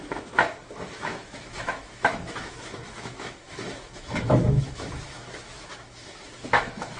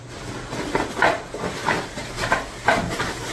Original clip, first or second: second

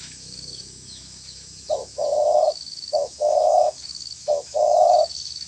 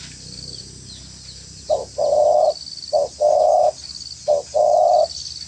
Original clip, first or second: second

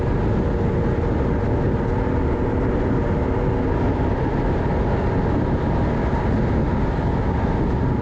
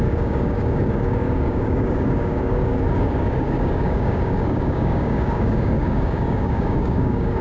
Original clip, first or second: first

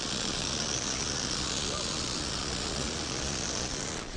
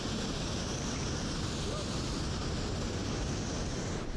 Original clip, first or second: second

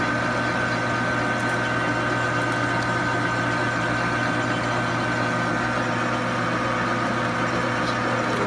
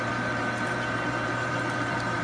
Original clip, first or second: first